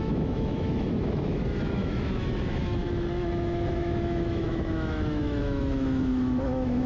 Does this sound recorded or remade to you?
remade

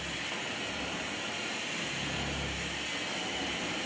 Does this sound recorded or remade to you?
recorded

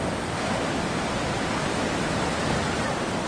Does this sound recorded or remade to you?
recorded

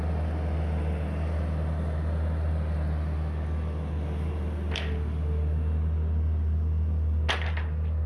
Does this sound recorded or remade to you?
recorded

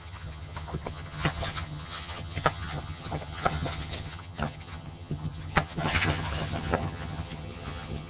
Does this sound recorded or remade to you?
remade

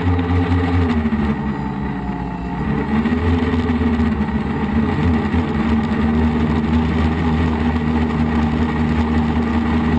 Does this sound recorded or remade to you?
recorded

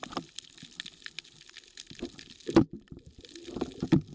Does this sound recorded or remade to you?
recorded